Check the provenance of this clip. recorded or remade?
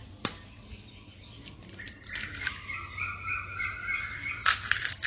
recorded